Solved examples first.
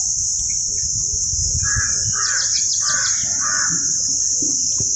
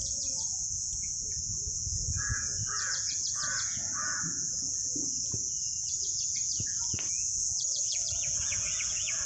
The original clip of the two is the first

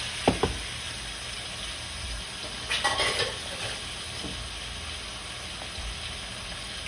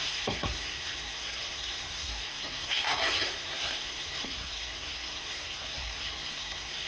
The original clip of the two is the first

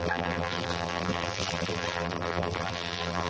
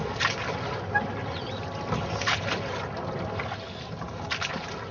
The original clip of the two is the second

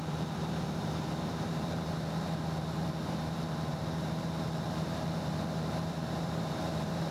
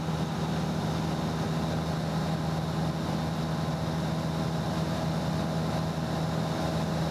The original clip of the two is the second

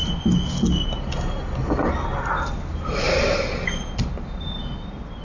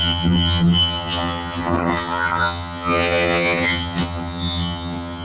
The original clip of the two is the first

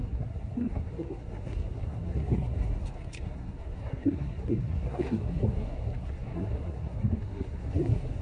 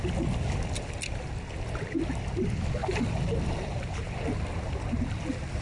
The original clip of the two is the second